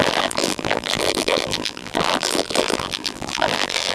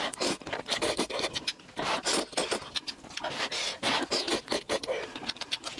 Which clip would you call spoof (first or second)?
first